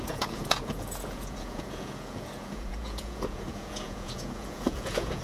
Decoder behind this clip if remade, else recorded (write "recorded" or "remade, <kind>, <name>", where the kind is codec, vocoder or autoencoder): remade, vocoder, Vocos